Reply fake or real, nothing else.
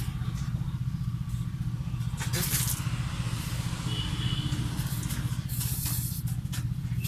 real